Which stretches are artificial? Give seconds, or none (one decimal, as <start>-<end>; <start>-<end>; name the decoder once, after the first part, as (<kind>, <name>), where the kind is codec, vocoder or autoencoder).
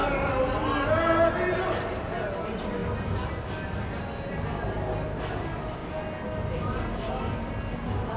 none